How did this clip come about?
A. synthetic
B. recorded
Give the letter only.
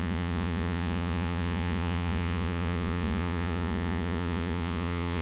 A